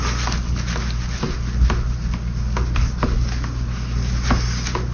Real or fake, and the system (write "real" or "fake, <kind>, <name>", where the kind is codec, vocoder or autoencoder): real